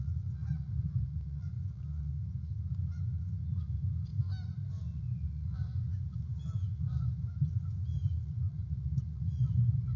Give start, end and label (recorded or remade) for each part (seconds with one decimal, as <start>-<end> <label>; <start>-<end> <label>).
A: 0.0-2.1 remade; 2.1-2.7 recorded; 2.7-4.1 remade; 4.1-4.7 recorded; 4.7-10.0 remade